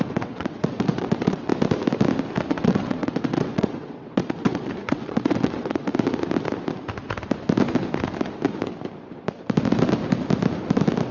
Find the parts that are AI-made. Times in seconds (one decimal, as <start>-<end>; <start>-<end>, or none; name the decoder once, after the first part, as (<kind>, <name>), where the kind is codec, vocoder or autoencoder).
0.0-1.5 (vocoder, WaveNeXt); 2.5-5.9